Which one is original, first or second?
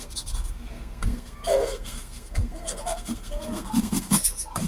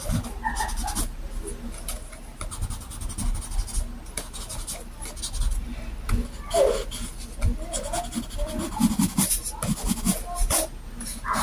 second